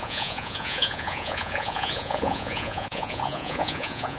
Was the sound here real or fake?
fake